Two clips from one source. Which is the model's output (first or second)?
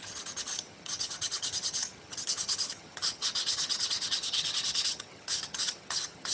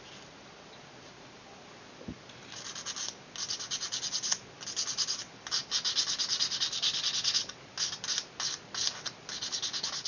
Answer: first